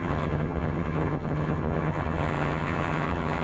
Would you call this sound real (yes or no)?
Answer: no